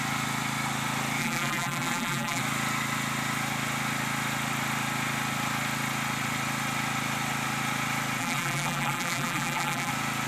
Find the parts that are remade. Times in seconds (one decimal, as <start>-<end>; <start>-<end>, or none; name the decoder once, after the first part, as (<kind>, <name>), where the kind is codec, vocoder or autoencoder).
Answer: 1.2-2.4 (vocoder, BigVGAN v2); 8.2-9.9